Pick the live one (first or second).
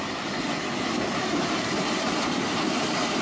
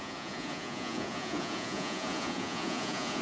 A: first